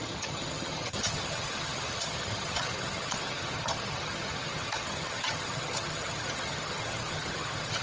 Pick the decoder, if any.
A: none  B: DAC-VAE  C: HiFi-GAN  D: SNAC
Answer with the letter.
C